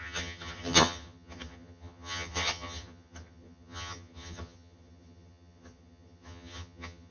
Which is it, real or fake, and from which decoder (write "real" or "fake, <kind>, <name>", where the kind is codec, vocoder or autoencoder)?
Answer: fake, vocoder, HiFi-GAN